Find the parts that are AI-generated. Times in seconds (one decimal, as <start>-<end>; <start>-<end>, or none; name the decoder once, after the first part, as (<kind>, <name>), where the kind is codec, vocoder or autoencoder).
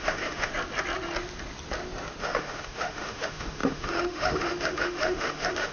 0.0-0.5 (autoencoder, DAC-VAE); 2.2-5.7